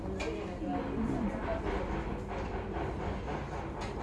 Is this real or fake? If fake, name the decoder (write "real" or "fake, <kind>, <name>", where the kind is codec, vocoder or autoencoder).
real